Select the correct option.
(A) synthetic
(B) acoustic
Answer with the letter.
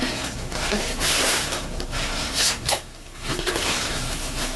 A